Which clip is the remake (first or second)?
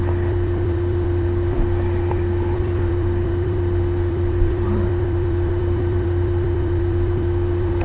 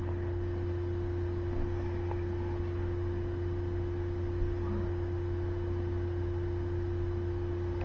first